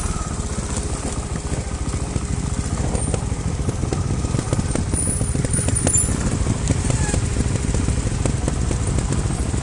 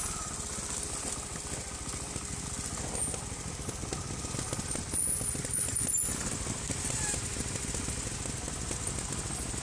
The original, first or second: second